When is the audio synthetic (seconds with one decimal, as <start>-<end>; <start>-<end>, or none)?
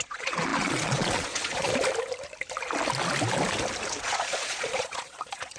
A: 0.0-1.7; 4.0-5.6